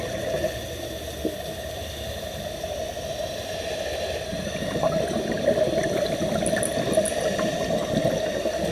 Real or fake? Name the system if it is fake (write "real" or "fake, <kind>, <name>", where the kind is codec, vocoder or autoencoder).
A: real